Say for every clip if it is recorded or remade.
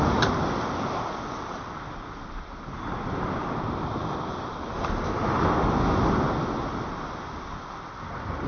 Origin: recorded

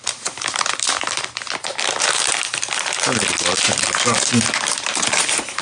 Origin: remade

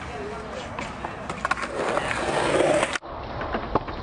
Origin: recorded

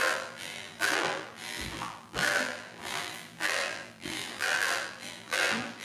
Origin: remade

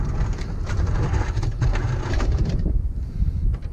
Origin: remade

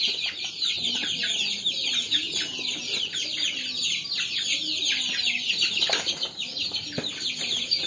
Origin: recorded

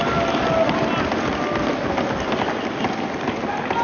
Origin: recorded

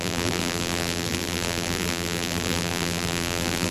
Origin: remade